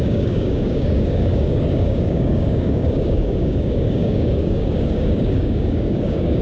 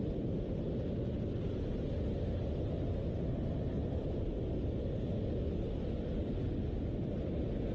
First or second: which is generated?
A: first